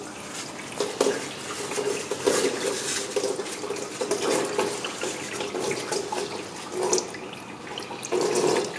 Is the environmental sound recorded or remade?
recorded